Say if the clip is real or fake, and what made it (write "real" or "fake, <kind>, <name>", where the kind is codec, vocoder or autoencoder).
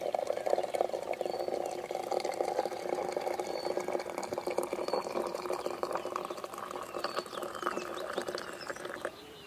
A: real